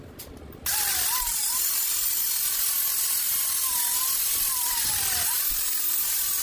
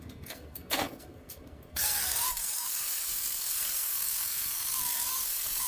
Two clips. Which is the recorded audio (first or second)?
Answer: first